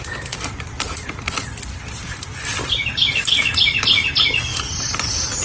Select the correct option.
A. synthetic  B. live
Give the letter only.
B